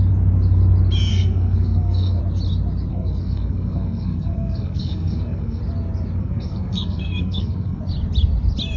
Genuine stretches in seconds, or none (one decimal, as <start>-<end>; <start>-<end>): 0.0-1.1; 2.2-2.9; 5.6-6.2; 7.8-8.8